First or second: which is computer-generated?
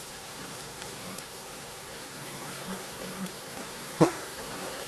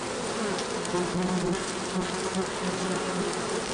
first